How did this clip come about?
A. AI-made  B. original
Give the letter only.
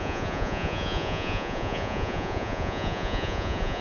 A